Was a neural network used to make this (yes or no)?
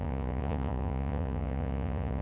yes